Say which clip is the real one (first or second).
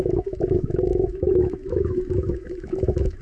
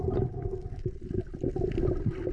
second